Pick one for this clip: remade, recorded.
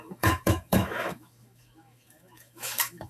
remade